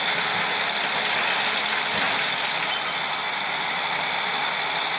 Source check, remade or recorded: recorded